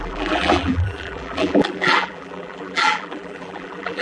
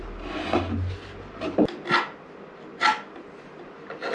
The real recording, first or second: second